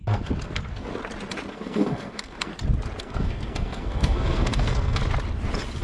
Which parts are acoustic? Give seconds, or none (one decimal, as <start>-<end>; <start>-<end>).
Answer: 0.9-1.5; 2.5-3.0; 5.0-5.8